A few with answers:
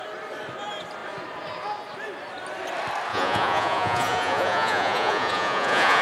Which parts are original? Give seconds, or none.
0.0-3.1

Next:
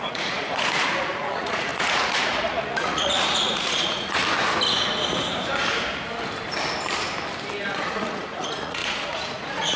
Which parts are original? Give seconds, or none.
4.2-7.6

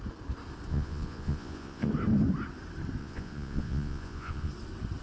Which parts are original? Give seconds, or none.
0.0-0.7; 1.9-3.0; 4.5-5.0

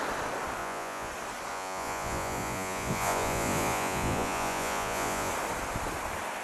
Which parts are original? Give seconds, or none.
0.0-0.6; 1.1-1.5; 5.3-6.4